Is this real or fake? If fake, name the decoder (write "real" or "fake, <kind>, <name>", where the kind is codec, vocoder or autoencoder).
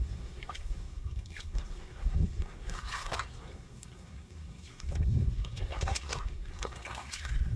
fake, codec, SNAC